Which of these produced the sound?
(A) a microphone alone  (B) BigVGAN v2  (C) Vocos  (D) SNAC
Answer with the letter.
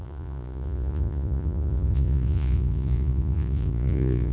C